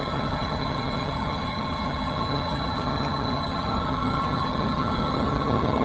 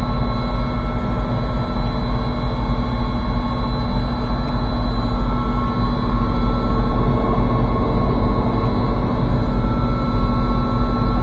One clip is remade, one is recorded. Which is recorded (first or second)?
second